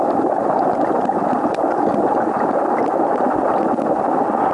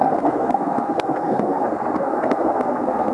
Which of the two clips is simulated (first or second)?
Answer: second